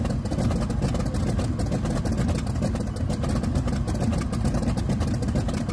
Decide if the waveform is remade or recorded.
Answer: recorded